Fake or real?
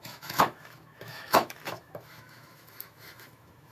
fake